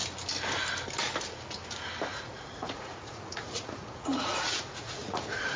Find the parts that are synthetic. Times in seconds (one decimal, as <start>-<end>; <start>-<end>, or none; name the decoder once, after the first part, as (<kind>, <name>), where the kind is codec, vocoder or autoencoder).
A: 2.1-5.6 (vocoder, Vocos)